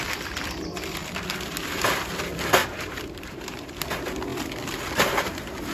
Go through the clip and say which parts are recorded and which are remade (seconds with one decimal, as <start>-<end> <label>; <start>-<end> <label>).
0.0-2.6 recorded; 2.6-3.8 remade; 3.8-5.7 recorded